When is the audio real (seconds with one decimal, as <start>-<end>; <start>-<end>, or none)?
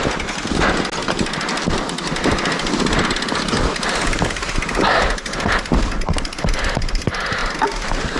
0.0-1.0; 1.9-7.4